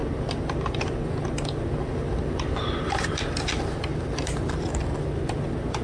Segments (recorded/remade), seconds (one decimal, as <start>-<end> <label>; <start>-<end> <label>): 0.0-3.9 recorded; 3.9-4.5 remade; 4.5-5.8 recorded